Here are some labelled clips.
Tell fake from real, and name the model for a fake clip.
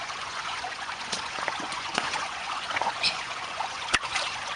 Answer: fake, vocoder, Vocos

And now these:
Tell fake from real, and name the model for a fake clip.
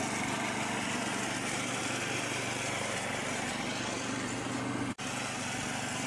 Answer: real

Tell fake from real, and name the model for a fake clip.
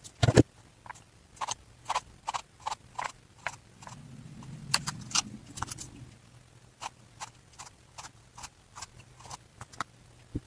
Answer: real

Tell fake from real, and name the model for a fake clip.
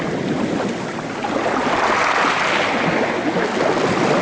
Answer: real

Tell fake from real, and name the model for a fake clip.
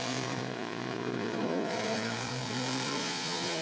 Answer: fake, vocoder, Vocos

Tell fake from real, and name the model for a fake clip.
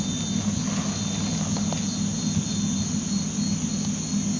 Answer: real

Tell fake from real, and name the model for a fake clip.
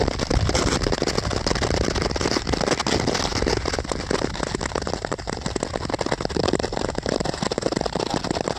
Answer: real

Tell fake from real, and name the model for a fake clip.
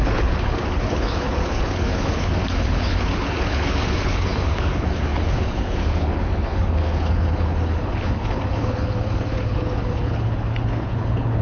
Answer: fake, codec, HILCodec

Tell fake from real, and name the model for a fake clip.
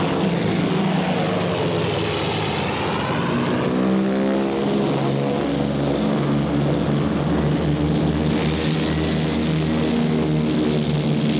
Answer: real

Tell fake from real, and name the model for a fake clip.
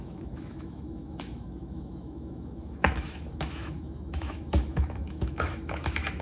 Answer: fake, autoencoder, DAC-VAE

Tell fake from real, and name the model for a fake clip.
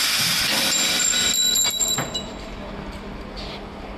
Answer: real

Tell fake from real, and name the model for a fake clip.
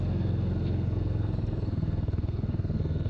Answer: fake, codec, SNAC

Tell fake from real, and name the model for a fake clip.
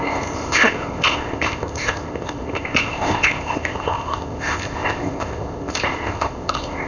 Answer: fake, codec, ZipCodec